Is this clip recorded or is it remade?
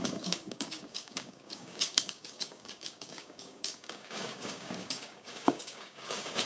remade